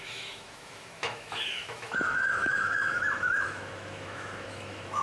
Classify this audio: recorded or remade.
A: remade